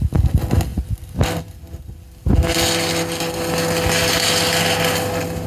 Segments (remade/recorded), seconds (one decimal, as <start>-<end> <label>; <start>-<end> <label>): 0.0-5.5 recorded